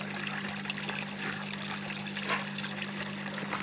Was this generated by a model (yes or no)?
no